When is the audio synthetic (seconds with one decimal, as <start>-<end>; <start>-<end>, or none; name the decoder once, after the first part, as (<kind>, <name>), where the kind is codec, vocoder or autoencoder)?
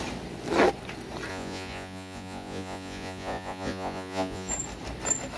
1.3-4.5 (vocoder, Vocos)